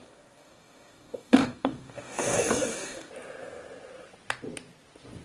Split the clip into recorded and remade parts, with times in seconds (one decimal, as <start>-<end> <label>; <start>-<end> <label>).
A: 0.0-3.1 remade; 3.1-5.2 recorded